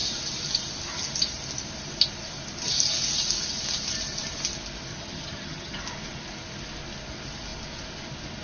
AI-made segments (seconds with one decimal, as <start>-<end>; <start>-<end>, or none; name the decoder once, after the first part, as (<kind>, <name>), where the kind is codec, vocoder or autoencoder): 4.9-5.8 (vocoder, HiFi-GAN)